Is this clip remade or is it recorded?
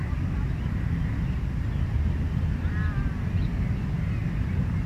recorded